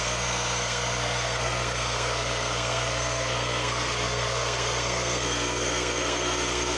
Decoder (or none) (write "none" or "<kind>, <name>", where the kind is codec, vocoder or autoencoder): codec, SNAC